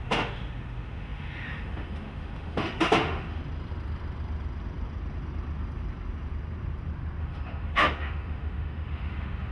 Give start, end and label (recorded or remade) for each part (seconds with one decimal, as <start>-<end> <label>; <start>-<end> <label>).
0.0-3.4 remade; 3.4-7.2 recorded; 7.2-9.5 remade